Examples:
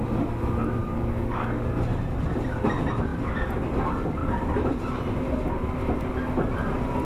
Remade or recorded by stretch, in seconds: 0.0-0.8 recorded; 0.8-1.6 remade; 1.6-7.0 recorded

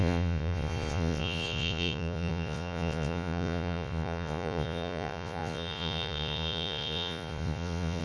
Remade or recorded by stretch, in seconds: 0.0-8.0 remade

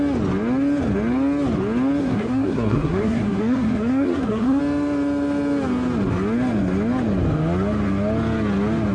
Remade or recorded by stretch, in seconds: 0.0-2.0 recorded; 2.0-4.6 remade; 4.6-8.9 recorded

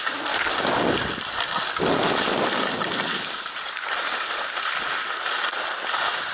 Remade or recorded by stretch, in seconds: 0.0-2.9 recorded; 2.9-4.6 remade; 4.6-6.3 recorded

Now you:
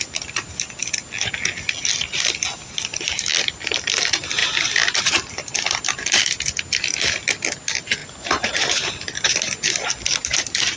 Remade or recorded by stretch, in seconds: 0.0-8.0 recorded; 8.0-8.9 remade; 8.9-10.8 recorded